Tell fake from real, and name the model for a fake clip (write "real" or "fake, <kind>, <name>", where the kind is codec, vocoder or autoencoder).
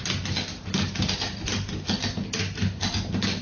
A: real